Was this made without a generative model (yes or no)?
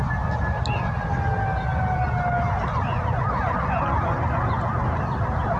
yes